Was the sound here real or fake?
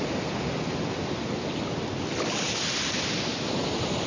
real